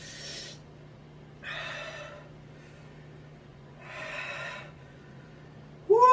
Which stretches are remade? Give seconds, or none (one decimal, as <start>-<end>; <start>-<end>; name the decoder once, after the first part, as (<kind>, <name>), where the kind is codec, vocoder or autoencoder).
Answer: 3.5-5.3 (vocoder, Vocos)